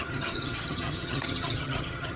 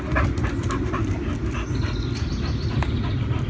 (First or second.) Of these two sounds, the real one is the second